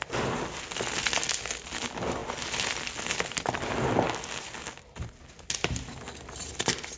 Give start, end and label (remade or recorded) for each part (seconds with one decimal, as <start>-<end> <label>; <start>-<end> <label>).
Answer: 0.0-7.0 recorded

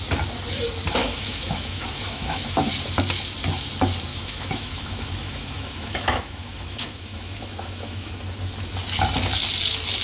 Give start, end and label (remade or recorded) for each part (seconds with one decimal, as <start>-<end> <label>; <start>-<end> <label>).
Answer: 0.0-1.0 recorded; 1.0-2.7 remade; 2.7-4.1 recorded; 4.1-8.1 remade; 8.1-10.0 recorded

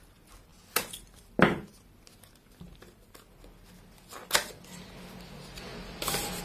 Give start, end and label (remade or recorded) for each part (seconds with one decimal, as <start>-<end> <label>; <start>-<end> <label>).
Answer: 0.0-6.4 recorded

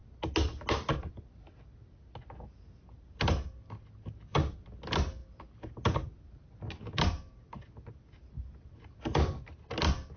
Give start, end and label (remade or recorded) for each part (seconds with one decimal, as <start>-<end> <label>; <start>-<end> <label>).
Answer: 0.0-10.2 recorded

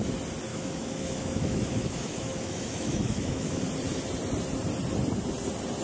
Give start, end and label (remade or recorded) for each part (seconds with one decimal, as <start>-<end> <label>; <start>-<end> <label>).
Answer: 0.0-0.5 recorded; 0.5-3.6 remade; 3.6-5.8 recorded

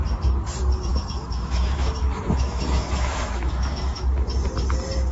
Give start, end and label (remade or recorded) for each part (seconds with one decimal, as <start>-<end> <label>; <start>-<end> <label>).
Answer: 0.0-0.9 recorded; 0.9-4.0 remade; 4.0-5.1 recorded

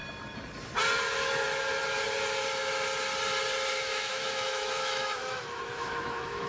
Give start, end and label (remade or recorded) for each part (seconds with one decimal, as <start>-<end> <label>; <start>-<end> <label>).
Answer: 0.0-3.7 recorded; 3.7-6.5 remade

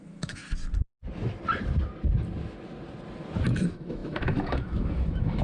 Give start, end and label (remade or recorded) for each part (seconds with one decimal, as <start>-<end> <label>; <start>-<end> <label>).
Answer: 0.0-0.4 remade; 0.4-3.6 recorded; 3.6-5.4 remade